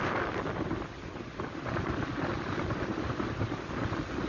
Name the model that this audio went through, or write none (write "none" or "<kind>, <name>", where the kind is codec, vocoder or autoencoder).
none